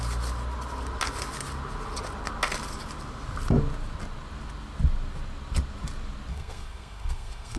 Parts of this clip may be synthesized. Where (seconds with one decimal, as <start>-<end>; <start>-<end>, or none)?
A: 6.3-7.6